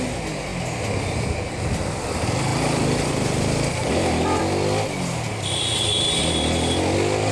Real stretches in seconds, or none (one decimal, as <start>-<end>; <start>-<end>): 0.0-7.3